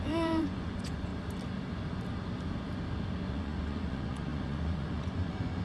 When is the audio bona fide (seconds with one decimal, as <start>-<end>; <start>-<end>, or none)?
1.1-3.3